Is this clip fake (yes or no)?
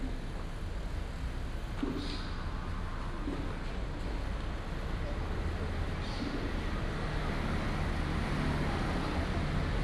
no